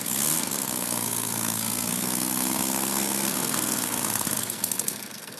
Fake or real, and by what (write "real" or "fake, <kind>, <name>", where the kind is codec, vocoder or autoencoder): fake, codec, SNAC